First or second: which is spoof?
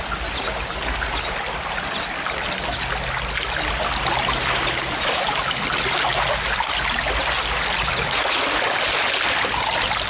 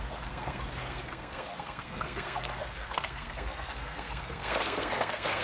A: second